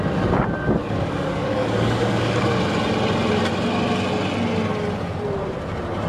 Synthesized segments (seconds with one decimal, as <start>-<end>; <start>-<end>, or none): 0.8-2.6